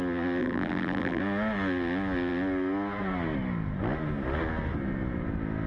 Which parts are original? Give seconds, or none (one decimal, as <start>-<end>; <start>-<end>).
0.0-0.4; 1.2-5.7